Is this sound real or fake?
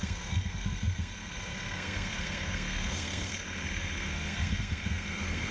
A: fake